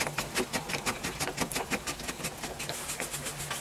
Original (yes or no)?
yes